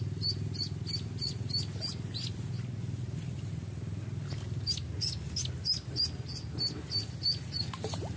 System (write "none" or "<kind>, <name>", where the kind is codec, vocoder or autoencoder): none